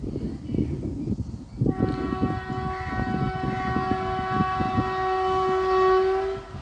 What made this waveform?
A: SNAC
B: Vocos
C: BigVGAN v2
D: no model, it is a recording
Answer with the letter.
D